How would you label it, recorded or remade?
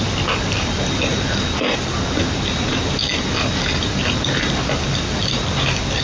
recorded